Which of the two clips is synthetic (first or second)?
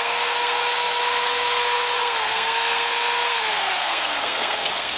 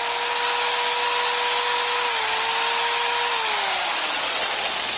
first